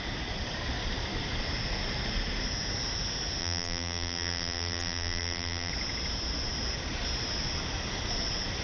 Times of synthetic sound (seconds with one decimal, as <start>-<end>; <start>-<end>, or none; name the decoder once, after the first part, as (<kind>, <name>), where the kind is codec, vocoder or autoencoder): 3.4-5.7 (vocoder, BigVGAN v2)

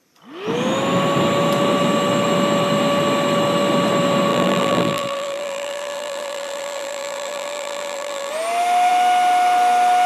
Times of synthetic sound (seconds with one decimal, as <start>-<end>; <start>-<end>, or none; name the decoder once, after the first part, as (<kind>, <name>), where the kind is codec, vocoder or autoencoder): 4.3-8.3 (vocoder, BigVGAN v2)

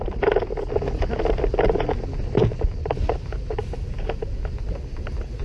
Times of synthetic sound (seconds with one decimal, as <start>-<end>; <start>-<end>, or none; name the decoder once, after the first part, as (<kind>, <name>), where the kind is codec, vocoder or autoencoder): none

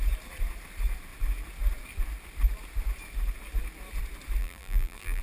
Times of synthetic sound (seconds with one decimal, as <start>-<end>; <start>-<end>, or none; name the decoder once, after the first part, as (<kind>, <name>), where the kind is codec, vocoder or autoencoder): 4.4-5.2 (vocoder, BigVGAN v2)